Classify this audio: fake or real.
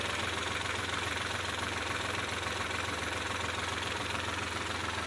fake